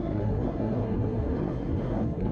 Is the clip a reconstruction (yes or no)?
yes